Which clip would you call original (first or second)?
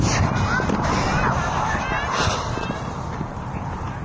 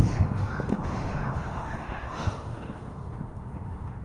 first